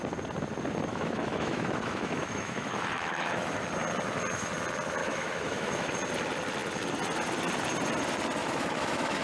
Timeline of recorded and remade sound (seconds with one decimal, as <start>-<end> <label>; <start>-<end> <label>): 0.0-0.9 recorded; 0.9-3.6 remade; 3.6-5.0 recorded; 5.0-5.9 remade; 5.9-8.4 recorded; 8.4-9.2 remade